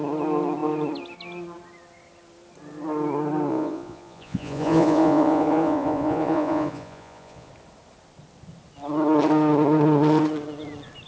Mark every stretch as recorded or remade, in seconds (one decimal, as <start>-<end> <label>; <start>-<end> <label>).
0.0-3.5 recorded; 3.5-7.5 remade; 7.5-11.1 recorded